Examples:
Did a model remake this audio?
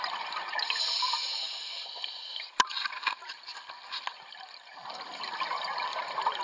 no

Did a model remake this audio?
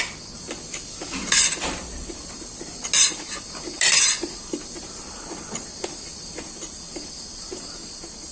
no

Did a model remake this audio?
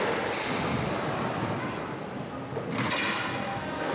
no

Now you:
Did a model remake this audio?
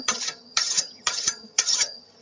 yes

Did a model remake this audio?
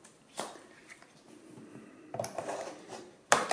yes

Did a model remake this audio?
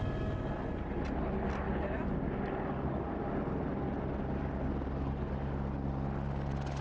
no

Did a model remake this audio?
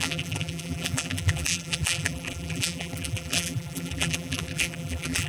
yes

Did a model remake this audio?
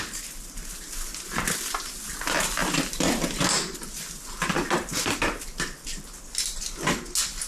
no